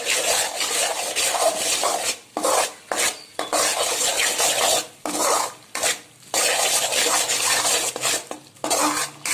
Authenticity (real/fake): real